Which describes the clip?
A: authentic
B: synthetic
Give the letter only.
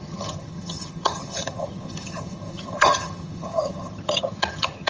B